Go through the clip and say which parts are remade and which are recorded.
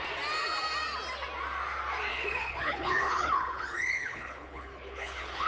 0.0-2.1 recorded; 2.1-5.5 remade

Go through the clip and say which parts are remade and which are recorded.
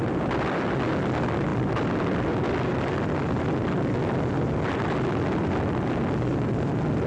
0.0-7.1 recorded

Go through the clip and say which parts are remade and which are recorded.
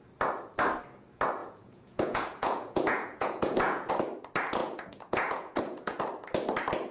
0.0-1.4 recorded; 1.4-3.9 remade; 3.9-4.6 recorded; 4.6-6.0 remade; 6.0-6.9 recorded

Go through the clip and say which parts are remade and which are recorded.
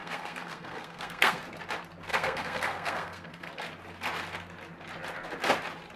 0.0-1.4 remade; 1.4-2.1 recorded; 2.1-3.5 remade; 3.5-6.0 recorded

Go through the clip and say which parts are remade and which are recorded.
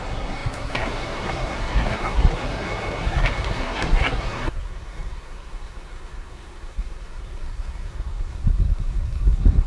0.0-9.7 remade